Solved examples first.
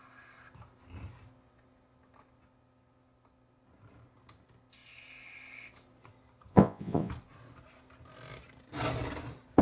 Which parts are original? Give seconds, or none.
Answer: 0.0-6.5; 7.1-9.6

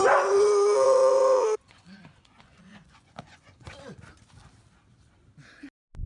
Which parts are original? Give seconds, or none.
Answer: 3.7-6.1

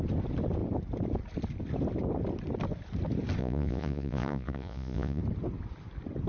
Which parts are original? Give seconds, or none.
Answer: 0.0-3.4; 5.2-6.3

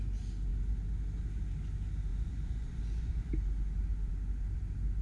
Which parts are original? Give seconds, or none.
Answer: 0.0-2.1; 3.3-5.0

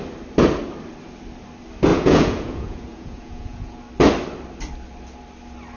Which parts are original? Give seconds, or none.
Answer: 0.0-1.9; 3.8-5.8

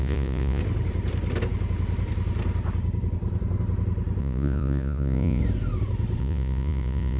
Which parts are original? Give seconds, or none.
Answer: 0.6-4.2; 5.4-6.2